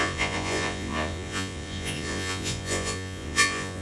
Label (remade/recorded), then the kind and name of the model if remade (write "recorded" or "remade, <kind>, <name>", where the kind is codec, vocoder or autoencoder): remade, vocoder, Vocos